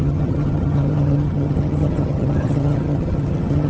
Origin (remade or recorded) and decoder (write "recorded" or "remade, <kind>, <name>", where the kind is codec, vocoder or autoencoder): remade, vocoder, HiFi-GAN